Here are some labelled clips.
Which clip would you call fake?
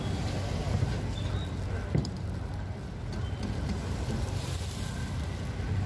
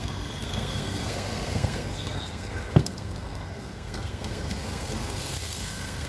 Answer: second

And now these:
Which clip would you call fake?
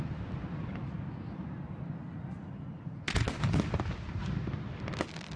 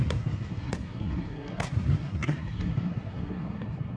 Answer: second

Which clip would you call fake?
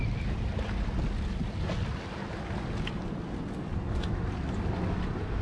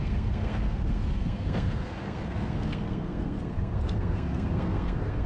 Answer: second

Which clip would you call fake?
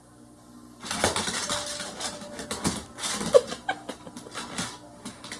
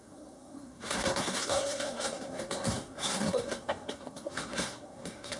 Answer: second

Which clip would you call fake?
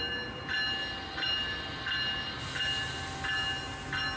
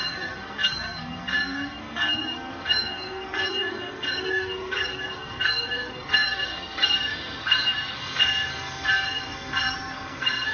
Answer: second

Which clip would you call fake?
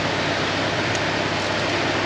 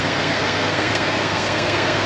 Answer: second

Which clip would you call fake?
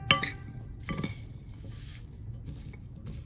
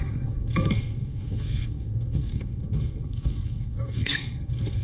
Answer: second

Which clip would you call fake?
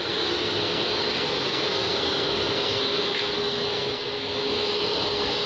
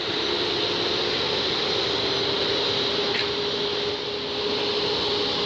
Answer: first